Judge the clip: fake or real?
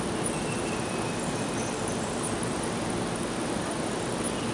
real